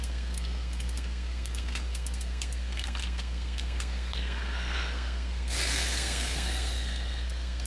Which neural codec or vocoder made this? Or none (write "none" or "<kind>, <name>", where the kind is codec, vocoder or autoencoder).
codec, SNAC